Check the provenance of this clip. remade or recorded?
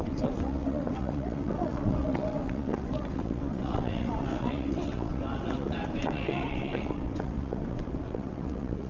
remade